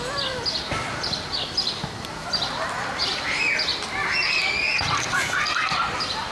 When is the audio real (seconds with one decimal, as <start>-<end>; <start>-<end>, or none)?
0.0-6.3